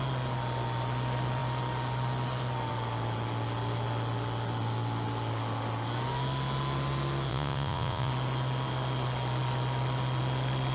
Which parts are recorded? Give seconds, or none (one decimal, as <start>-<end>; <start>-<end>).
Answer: 0.0-7.3; 8.1-10.7